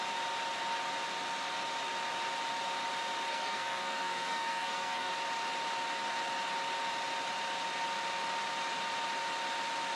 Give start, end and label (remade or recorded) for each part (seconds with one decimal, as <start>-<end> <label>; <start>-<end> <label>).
0.0-3.3 recorded; 3.3-5.1 remade; 5.1-10.0 recorded